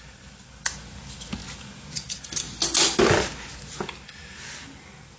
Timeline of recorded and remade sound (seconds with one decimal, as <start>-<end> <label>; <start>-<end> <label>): 0.0-5.2 recorded